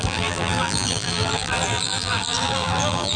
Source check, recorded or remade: remade